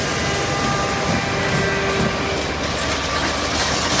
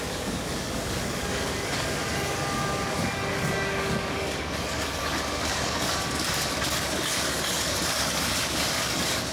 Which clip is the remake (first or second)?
second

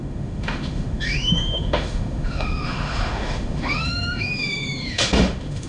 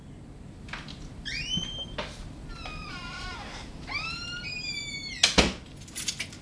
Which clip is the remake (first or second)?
first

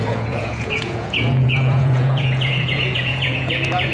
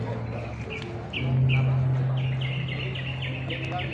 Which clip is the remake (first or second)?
first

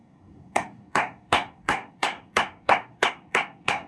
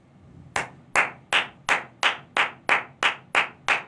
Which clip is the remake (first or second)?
first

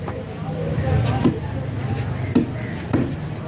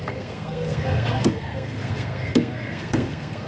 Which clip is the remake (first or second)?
second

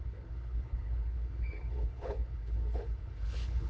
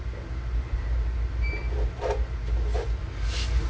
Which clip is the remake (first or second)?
first